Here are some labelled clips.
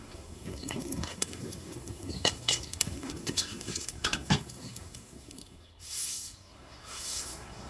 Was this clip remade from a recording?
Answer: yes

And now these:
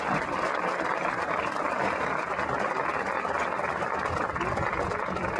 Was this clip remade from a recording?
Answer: no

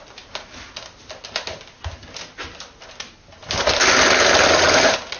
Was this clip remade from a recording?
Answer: no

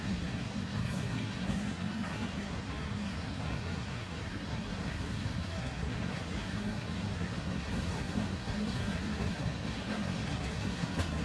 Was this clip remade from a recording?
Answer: yes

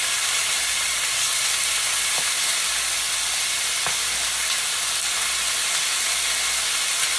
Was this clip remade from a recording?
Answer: no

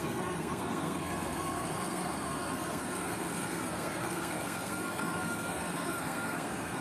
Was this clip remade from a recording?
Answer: yes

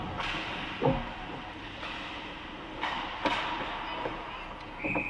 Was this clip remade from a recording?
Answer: no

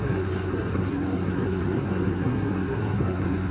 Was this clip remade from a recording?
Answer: yes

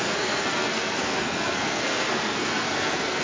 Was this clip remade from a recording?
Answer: yes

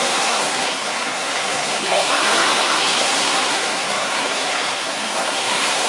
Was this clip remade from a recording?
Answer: yes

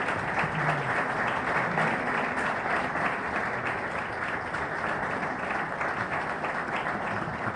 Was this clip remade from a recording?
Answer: no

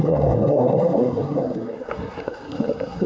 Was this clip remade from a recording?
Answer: yes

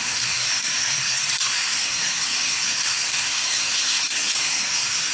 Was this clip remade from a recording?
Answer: yes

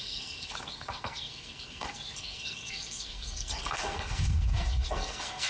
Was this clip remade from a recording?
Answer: yes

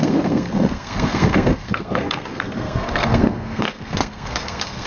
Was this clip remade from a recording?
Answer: yes